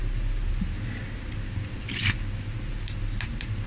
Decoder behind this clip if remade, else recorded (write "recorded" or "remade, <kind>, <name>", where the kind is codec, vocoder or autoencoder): recorded